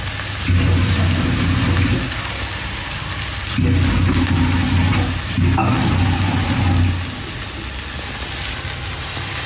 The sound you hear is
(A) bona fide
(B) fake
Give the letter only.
A